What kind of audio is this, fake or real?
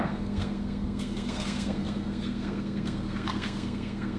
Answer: fake